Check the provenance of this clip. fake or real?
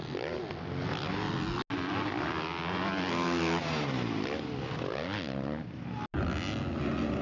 real